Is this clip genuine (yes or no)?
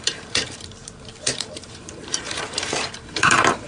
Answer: no